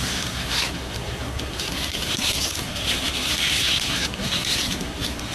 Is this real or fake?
fake